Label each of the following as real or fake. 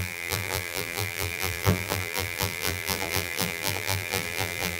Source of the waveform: fake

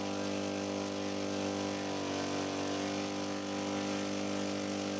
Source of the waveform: real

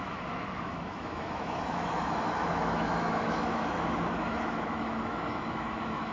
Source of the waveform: fake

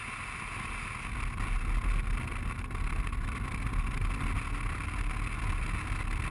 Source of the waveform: real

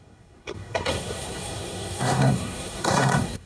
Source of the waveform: fake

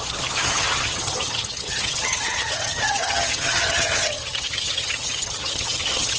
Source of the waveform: fake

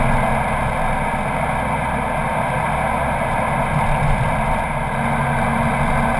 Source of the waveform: real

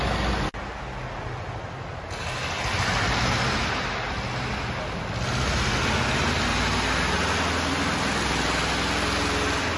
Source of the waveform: real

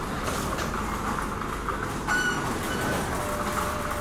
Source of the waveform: real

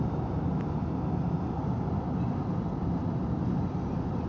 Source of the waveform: real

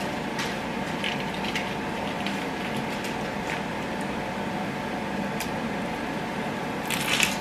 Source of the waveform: real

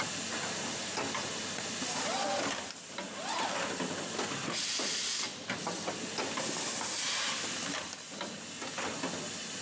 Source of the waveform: real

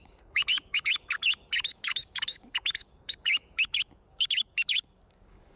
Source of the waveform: fake